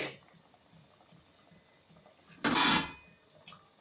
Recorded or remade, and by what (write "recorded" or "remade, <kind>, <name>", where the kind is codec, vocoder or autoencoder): recorded